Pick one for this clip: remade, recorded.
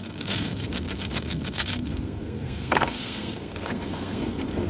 remade